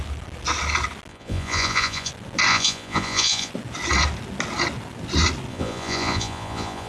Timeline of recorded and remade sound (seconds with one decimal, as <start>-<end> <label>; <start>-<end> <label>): 0.0-1.1 recorded; 1.1-2.1 remade; 2.1-2.5 recorded; 2.5-3.5 remade; 3.5-5.5 recorded; 5.5-6.9 remade